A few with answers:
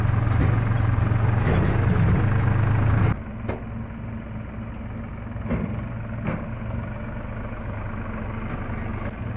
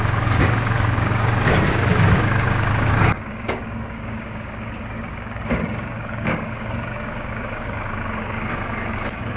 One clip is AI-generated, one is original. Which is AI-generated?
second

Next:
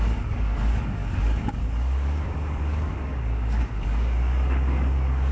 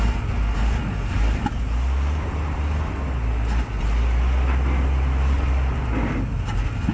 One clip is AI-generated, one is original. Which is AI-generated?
first